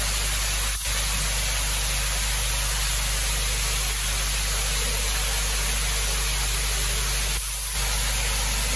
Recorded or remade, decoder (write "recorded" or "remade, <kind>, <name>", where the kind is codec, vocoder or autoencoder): recorded